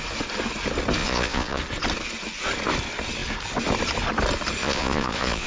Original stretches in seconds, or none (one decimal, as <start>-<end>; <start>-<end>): 0.0-1.0; 1.6-4.6